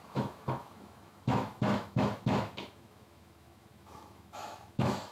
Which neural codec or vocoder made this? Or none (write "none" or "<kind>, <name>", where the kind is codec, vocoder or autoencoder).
autoencoder, DAC-VAE